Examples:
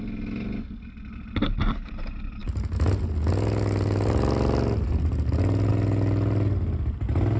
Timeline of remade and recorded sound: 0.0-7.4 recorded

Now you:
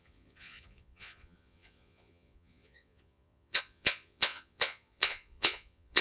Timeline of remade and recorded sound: 0.0-6.0 remade

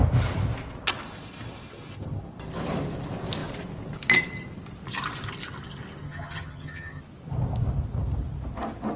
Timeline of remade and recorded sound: 0.0-6.0 recorded; 6.0-7.0 remade; 7.0-9.0 recorded

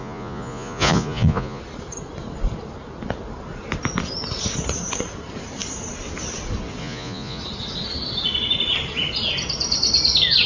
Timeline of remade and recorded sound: 0.0-1.6 remade; 1.6-6.8 recorded; 6.8-7.4 remade; 7.4-10.5 recorded

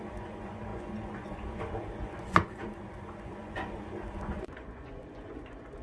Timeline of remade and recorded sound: 0.0-5.8 remade

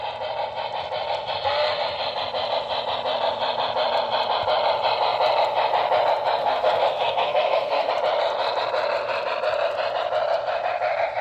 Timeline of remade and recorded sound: 0.0-6.4 recorded; 6.4-7.9 remade; 7.9-11.2 recorded

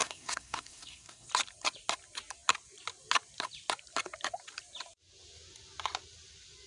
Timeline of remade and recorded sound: 0.0-1.3 remade; 1.3-6.7 recorded